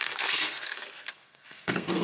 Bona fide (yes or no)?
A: no